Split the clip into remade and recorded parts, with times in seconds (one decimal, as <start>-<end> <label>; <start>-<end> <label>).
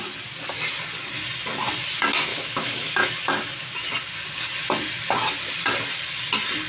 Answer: 0.0-2.3 recorded; 2.3-3.1 remade; 3.1-6.7 recorded